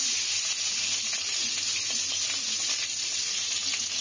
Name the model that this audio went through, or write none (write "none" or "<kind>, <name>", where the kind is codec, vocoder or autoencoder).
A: none